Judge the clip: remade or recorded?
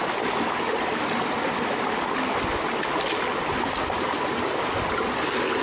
recorded